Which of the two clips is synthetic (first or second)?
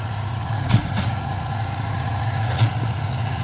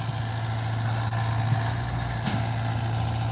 first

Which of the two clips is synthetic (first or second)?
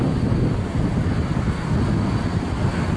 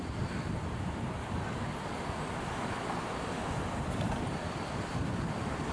second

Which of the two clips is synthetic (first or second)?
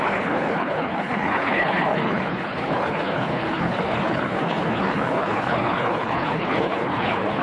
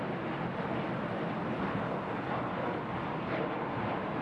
first